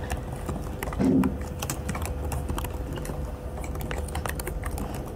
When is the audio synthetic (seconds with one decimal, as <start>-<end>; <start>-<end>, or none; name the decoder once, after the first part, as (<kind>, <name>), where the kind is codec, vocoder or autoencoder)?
none